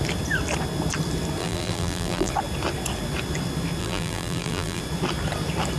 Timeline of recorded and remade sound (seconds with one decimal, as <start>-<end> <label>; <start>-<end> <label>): 0.0-1.4 recorded; 1.4-2.3 remade; 2.3-3.8 recorded; 3.8-4.8 remade; 4.8-5.8 recorded

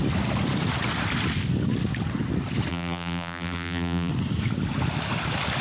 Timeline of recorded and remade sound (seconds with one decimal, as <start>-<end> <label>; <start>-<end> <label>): 0.0-2.7 recorded; 2.7-4.1 remade; 4.1-5.6 recorded

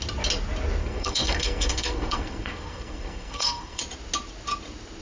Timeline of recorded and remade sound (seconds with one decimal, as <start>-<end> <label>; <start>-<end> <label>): 0.0-0.8 recorded; 0.8-3.8 remade; 3.8-5.0 recorded